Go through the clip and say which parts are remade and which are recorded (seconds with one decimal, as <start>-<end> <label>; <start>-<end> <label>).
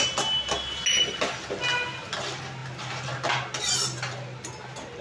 0.0-5.0 recorded